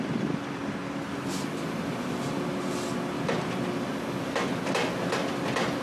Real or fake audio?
real